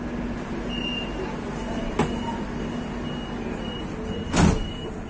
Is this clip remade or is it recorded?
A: recorded